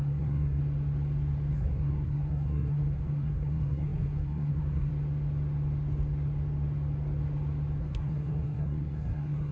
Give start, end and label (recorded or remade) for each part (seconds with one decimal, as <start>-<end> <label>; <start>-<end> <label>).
0.0-0.6 remade; 0.6-1.5 recorded; 1.5-4.9 remade; 4.9-7.8 recorded; 7.8-9.5 remade